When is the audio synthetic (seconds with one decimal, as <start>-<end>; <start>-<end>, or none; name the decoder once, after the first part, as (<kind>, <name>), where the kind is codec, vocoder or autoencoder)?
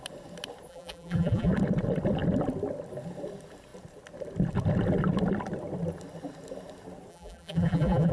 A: 0.7-1.5 (vocoder, BigVGAN v2); 7.1-8.1